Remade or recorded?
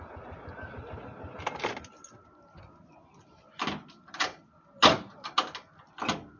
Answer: recorded